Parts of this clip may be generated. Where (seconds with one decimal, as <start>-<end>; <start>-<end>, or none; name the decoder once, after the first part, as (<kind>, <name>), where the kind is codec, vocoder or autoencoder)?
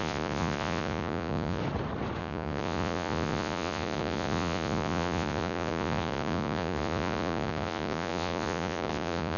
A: 0.0-1.6 (vocoder, Vocos); 2.2-9.4